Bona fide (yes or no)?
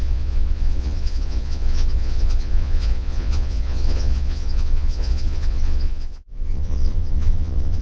no